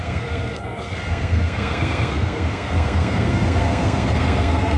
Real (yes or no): no